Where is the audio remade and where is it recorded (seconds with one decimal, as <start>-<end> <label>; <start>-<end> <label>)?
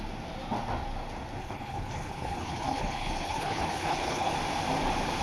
0.0-1.4 recorded; 1.4-4.3 remade; 4.3-5.2 recorded